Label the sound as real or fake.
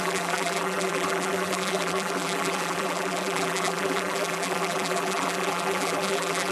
fake